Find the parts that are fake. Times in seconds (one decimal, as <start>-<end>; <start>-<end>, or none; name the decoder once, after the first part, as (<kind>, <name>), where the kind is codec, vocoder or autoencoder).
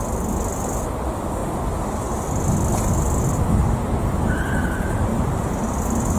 none